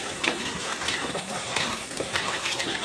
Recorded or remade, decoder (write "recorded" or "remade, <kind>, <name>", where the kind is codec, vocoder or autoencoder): remade, codec, SNAC